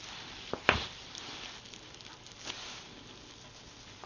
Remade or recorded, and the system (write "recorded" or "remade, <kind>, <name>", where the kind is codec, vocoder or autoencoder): recorded